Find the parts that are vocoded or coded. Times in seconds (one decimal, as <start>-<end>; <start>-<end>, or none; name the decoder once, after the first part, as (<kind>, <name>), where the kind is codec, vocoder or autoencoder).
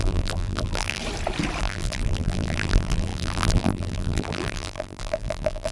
0.0-1.0 (vocoder, BigVGAN v2); 1.6-5.7